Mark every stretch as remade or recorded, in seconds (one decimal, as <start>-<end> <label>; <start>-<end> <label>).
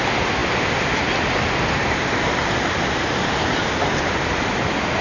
0.0-5.0 recorded